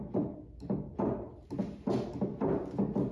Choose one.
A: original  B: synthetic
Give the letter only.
A